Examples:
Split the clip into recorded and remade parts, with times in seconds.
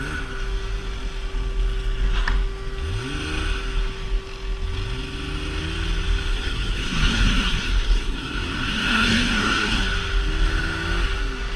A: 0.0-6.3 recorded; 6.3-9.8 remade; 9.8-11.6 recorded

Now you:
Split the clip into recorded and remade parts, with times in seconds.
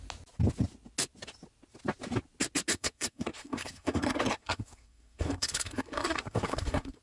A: 0.0-2.7 recorded; 2.7-7.0 remade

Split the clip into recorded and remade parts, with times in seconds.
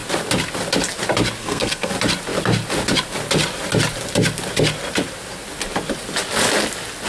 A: 0.0-1.4 recorded; 1.4-1.9 remade; 1.9-7.1 recorded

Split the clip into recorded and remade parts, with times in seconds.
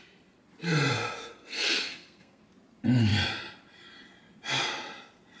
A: 0.0-1.3 recorded; 1.3-2.4 remade; 2.4-5.4 recorded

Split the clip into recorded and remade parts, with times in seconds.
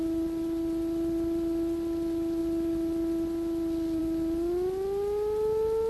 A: 0.0-5.9 recorded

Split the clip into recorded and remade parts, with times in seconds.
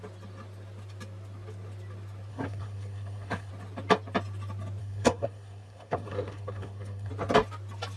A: 0.0-2.3 recorded; 2.3-3.5 remade; 3.5-4.8 recorded; 4.8-7.1 remade; 7.1-8.0 recorded